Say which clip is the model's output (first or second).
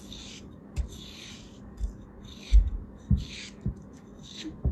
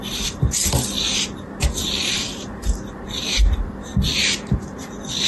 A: first